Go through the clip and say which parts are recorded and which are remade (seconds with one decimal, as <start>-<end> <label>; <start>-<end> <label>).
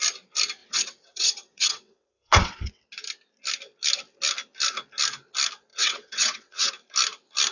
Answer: 0.0-0.6 recorded; 0.6-2.8 remade; 2.8-5.7 recorded; 5.7-6.7 remade; 6.7-7.5 recorded